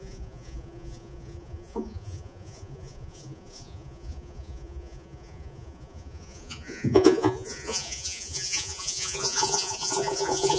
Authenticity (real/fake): fake